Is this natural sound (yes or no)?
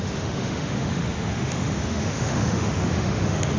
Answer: no